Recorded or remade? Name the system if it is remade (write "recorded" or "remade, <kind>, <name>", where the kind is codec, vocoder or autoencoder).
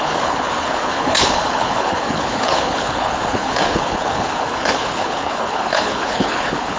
remade, codec, HILCodec